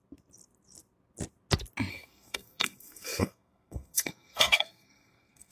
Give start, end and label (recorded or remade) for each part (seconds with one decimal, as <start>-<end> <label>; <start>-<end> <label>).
0.0-1.9 recorded; 1.9-5.5 remade